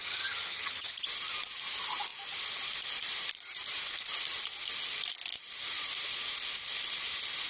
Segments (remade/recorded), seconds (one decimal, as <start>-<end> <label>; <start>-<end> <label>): 0.0-0.9 remade; 0.9-7.5 recorded